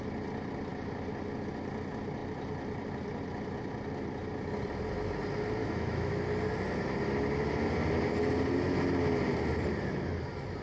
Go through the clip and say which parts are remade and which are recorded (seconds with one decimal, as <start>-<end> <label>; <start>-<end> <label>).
0.0-5.6 recorded; 5.6-6.1 remade; 6.1-10.6 recorded